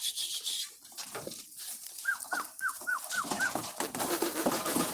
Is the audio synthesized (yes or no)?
yes